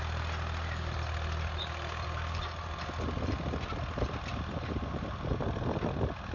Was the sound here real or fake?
real